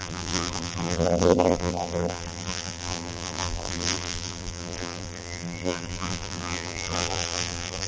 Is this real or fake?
fake